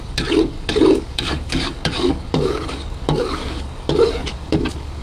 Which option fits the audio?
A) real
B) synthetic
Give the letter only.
B